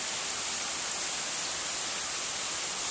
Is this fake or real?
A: real